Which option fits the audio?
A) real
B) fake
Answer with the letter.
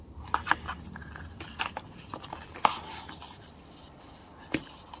A